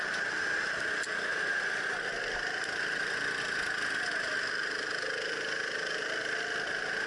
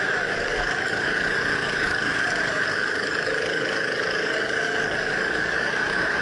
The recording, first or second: first